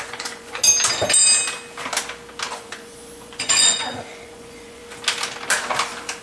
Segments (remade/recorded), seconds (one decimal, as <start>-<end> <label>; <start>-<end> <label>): 0.0-0.6 remade; 0.6-2.5 recorded; 2.5-4.8 remade; 4.8-6.2 recorded

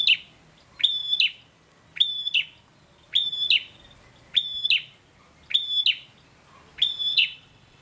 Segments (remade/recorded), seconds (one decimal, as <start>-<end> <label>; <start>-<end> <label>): 0.0-7.1 recorded; 7.1-7.8 remade

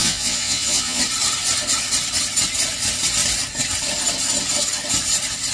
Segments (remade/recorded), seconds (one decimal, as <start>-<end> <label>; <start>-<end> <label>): 0.0-1.0 remade; 1.0-5.5 recorded

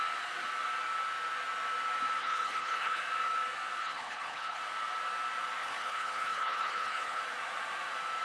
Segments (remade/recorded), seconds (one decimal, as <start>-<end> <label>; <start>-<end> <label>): 0.0-2.2 recorded; 2.2-3.0 remade; 3.0-3.8 recorded; 3.8-4.6 remade; 4.6-5.6 recorded; 5.6-7.2 remade; 7.2-8.2 recorded

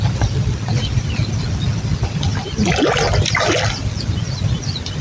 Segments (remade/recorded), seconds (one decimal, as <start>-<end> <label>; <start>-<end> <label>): 0.0-5.0 recorded

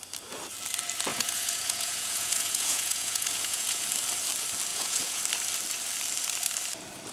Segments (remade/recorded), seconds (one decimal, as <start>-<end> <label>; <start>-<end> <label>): 0.0-1.1 recorded; 1.1-3.8 remade; 3.8-4.7 recorded; 4.7-5.2 remade; 5.2-7.1 recorded